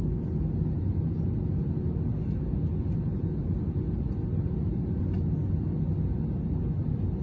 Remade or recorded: recorded